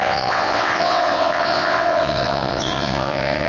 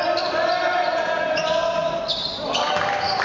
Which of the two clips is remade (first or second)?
first